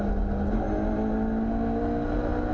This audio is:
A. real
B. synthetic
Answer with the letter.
A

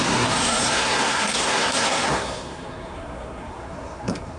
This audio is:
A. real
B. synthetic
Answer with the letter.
B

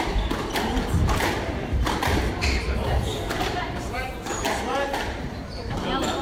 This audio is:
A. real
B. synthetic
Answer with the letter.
B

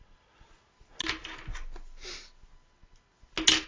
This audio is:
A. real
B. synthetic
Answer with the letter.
A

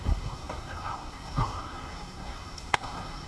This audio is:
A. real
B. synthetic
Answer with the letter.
B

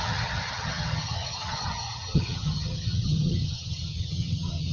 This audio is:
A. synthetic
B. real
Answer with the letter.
A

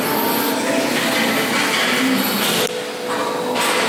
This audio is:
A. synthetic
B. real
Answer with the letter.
B